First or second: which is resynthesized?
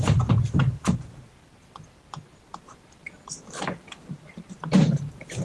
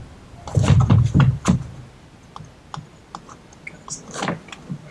first